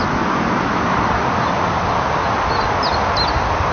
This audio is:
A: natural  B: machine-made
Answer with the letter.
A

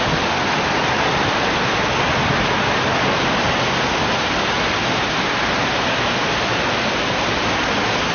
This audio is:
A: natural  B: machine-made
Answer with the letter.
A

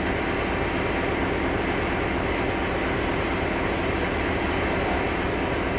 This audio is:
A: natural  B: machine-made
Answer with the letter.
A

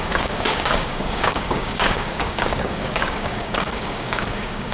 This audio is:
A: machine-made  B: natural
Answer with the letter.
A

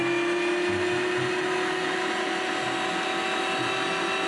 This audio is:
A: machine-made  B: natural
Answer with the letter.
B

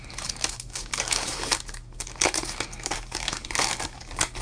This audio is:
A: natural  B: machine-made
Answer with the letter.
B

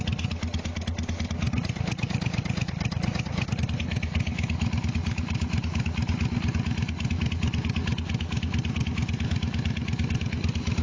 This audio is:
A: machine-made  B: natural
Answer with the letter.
B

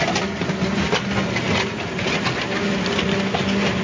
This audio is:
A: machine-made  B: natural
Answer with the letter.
B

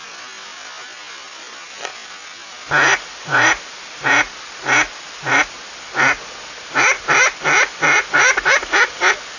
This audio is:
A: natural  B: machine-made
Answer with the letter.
A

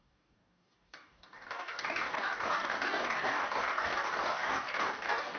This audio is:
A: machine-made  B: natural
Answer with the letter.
A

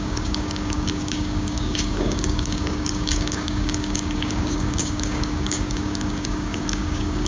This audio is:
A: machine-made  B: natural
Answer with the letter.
A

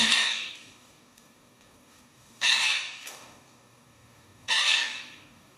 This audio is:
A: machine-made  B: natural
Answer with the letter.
A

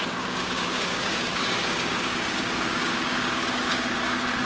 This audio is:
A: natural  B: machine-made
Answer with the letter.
B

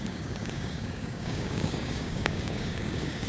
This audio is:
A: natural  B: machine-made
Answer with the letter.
B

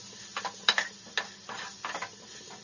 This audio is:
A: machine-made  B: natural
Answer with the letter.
B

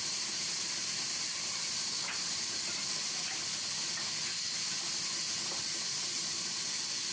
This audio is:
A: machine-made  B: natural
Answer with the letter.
B